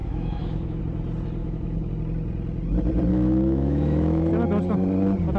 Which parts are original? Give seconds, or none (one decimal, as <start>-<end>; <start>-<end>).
0.8-1.4; 1.9-3.1; 4.3-5.4